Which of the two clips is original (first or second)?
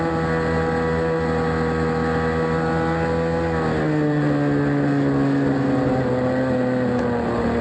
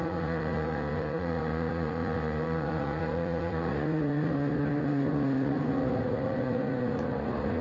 first